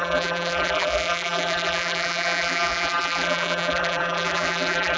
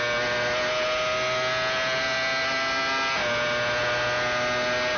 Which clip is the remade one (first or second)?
first